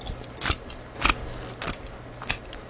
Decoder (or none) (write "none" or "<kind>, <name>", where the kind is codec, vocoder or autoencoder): none